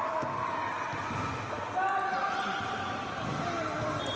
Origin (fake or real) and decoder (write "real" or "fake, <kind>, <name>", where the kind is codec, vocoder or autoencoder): real